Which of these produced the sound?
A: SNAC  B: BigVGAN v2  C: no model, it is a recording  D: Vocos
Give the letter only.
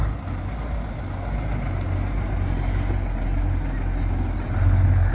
C